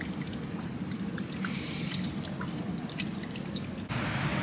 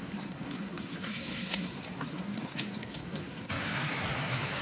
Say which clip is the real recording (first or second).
first